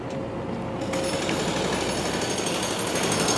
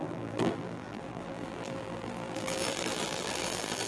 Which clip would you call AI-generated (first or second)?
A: second